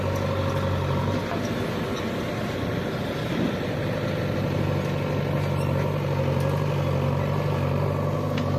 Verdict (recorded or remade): recorded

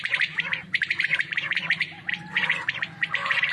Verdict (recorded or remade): remade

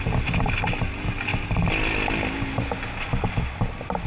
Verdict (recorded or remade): recorded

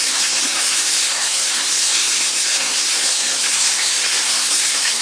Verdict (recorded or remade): remade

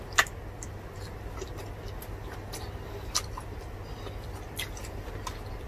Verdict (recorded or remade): recorded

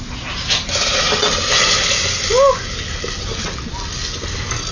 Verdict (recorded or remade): recorded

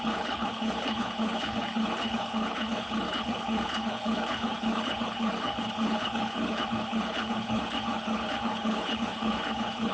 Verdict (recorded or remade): remade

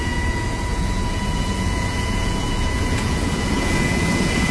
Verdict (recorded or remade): remade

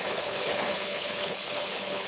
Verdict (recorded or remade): remade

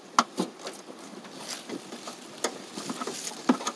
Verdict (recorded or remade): recorded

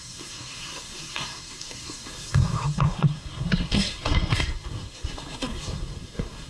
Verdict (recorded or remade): remade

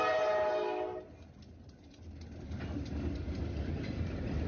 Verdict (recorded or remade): recorded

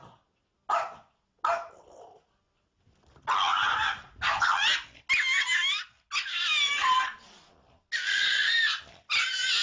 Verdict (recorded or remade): recorded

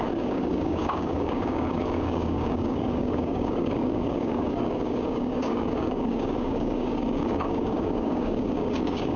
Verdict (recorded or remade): remade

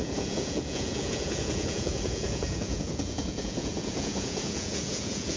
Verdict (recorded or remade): remade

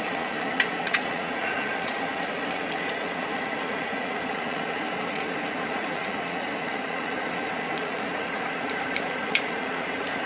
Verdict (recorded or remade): remade